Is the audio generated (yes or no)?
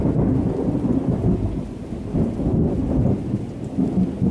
no